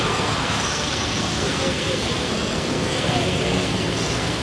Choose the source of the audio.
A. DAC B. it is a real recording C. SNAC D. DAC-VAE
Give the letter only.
C